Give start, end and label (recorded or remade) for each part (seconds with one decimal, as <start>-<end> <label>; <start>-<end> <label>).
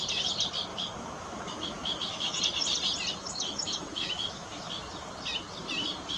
0.0-0.7 recorded; 0.7-2.4 remade; 2.4-3.1 recorded; 3.1-4.7 remade; 4.7-6.2 recorded